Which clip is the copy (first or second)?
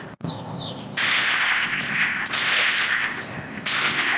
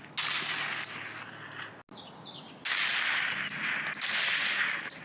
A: first